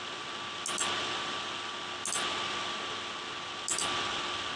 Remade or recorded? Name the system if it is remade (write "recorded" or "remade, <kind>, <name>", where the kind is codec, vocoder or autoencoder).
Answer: recorded